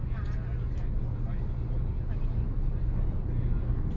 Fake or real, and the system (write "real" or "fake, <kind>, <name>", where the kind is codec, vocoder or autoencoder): real